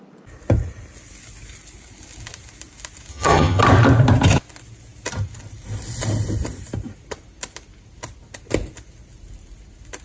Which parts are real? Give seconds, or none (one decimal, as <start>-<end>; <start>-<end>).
0.0-3.1; 3.6-10.0